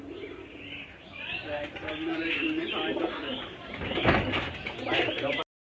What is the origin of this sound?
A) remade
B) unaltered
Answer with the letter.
B